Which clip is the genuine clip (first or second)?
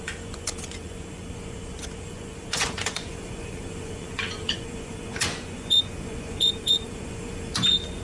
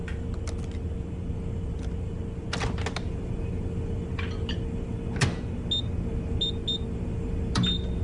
second